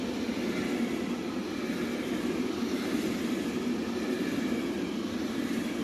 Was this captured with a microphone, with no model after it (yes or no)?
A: yes